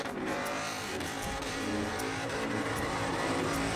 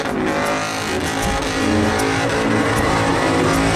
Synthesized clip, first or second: first